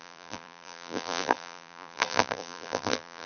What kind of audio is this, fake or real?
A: fake